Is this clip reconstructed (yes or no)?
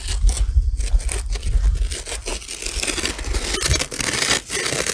no